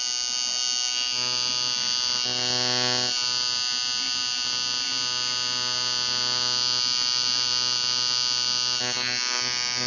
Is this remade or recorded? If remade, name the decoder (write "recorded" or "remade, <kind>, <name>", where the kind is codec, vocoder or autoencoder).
recorded